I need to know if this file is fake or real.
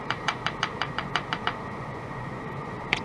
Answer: fake